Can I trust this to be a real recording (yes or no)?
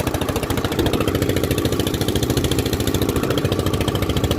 no